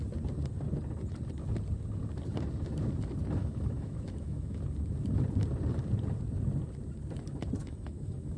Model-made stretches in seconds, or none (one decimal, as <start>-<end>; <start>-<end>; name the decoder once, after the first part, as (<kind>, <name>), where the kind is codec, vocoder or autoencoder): 3.4-4.6 (autoencoder, DAC-VAE); 7.6-8.4